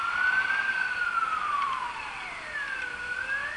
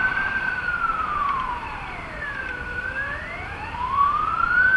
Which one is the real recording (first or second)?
first